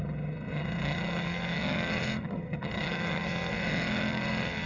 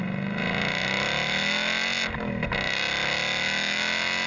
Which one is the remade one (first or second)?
first